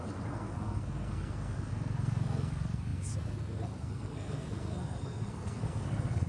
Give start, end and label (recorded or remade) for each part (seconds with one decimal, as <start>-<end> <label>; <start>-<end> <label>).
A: 0.0-6.3 remade